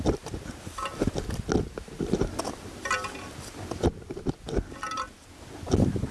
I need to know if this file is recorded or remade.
recorded